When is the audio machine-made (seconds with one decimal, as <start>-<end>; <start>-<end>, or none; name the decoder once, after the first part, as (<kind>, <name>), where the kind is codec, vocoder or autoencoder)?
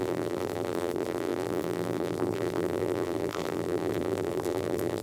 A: 0.0-5.0 (vocoder, BigVGAN v2)